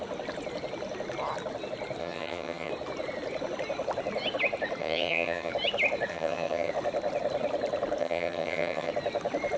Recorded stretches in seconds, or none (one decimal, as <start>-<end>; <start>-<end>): 0.0-2.0; 2.7-4.8; 5.5-6.1; 6.7-8.0; 8.9-9.6